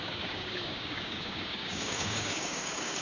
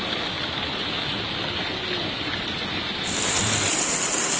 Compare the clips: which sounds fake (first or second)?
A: first